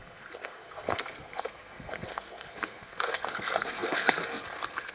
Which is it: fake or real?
fake